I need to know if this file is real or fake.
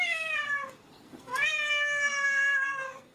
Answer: fake